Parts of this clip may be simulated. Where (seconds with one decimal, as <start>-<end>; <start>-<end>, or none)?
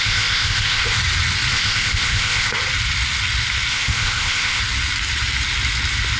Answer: 0.0-1.0; 1.5-2.6; 3.7-4.6